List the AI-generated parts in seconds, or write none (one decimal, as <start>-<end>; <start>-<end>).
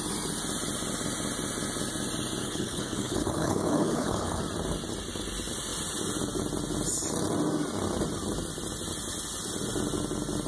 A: 2.4-4.4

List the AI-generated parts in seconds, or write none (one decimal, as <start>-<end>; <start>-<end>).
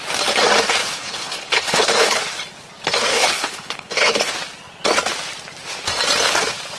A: 0.8-2.2; 3.1-4.3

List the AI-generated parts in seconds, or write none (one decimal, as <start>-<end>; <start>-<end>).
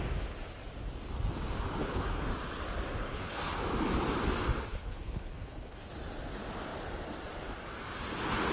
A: 1.8-2.3; 3.0-3.5; 4.7-5.9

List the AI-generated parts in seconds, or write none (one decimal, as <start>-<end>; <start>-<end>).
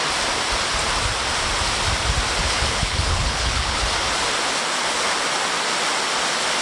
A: 2.4-3.8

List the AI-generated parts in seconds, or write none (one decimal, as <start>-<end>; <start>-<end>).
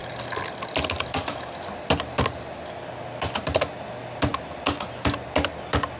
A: none